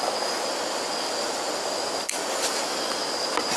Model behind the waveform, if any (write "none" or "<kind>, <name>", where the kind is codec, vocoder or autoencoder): none